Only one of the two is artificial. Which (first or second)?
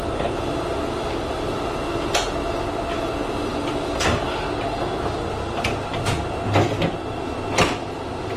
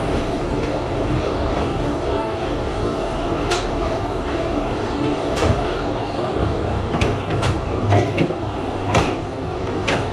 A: second